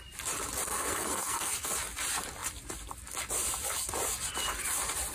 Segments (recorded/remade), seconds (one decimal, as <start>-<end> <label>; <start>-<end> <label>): 0.0-0.7 recorded; 0.7-1.7 remade; 1.7-5.1 recorded